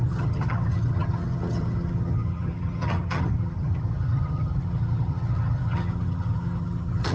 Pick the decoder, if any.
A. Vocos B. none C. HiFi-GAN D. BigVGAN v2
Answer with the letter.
C